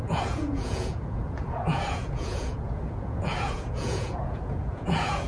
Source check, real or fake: fake